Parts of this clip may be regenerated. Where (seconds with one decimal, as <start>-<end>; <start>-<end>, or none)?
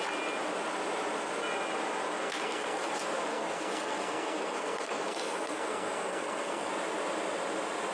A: 2.2-2.9; 3.3-6.7